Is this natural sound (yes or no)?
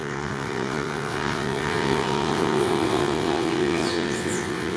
no